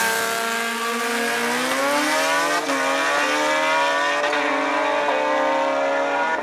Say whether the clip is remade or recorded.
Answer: recorded